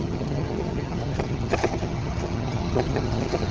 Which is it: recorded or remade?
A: remade